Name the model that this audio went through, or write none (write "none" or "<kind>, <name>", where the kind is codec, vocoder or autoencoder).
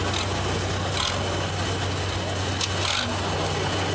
none